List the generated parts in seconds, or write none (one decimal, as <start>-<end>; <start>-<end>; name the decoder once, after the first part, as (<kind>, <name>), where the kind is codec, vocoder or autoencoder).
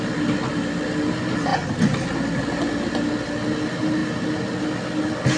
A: none